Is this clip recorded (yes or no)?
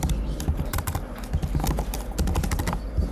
yes